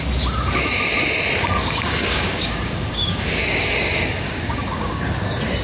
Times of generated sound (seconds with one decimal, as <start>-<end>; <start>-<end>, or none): 1.6-5.0